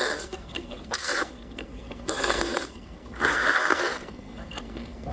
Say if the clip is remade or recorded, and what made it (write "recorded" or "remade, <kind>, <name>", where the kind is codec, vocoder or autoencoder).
remade, codec, SNAC